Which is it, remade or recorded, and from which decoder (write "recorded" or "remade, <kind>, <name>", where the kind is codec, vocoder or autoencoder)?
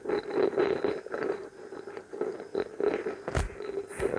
recorded